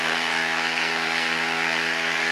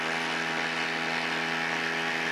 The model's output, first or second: first